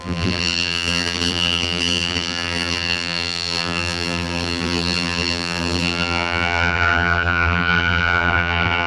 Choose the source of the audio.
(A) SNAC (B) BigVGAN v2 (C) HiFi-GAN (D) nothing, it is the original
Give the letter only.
B